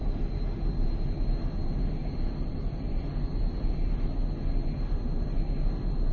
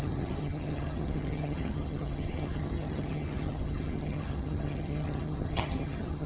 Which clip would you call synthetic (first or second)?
second